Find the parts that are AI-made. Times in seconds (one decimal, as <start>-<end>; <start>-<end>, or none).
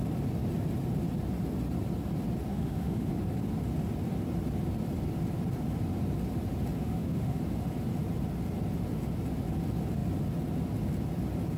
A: 2.5-3.1; 6.8-7.4